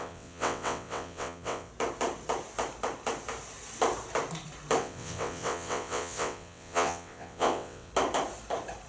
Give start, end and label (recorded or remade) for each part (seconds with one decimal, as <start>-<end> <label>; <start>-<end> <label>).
0.0-1.7 remade; 1.7-4.8 recorded; 4.8-7.9 remade; 7.9-8.9 recorded